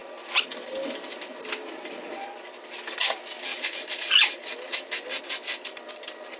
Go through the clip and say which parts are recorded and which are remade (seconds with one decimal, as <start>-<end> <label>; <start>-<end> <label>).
0.0-6.4 recorded